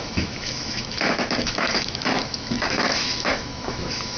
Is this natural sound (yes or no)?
no